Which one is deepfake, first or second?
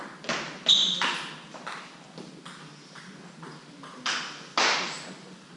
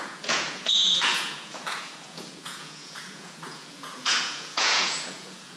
second